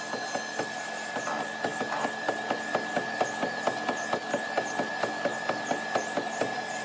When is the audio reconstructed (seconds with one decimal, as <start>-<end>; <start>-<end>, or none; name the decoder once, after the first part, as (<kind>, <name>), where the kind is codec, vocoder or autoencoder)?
none